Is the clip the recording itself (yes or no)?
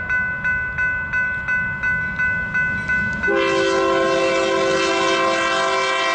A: yes